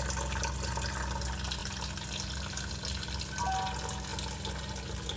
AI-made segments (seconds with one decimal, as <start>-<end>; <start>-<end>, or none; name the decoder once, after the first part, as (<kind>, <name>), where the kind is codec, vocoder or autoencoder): none